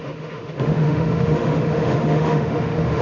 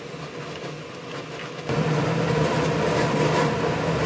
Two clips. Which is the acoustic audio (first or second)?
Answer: second